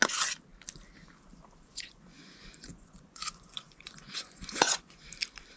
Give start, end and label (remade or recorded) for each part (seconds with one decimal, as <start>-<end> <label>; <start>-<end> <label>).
0.0-1.7 recorded; 1.7-5.1 remade; 5.1-5.6 recorded